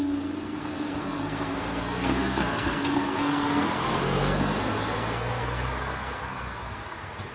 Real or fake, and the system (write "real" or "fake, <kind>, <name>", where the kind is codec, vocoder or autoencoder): fake, codec, SNAC